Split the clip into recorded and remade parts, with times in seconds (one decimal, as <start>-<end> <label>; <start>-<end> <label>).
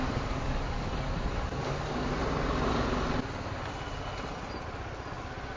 0.0-2.1 remade; 2.1-5.6 recorded